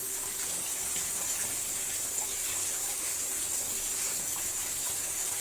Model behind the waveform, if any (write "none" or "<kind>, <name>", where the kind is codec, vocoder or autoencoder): codec, DAC